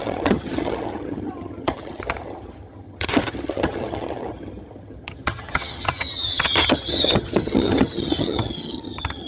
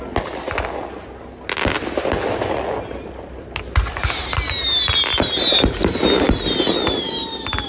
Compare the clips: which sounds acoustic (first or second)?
second